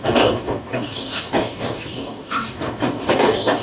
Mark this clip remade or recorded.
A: remade